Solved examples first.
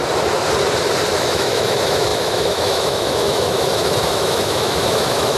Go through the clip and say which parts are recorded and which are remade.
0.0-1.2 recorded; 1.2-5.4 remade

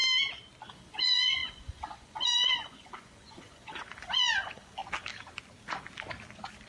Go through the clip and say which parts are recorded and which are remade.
0.0-0.7 recorded; 0.7-4.8 remade; 4.8-6.7 recorded

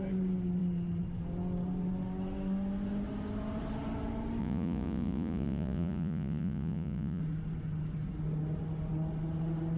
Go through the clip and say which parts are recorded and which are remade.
0.0-4.4 recorded; 4.4-7.2 remade; 7.2-9.8 recorded

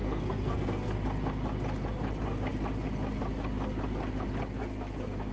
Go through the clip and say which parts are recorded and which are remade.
0.0-0.9 remade; 0.9-4.6 recorded; 4.6-5.3 remade